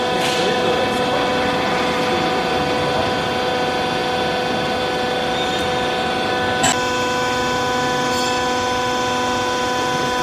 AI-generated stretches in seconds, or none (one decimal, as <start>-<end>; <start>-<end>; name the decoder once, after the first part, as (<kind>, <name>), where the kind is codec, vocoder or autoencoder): 1.3-2.0 (vocoder, BigVGAN v2)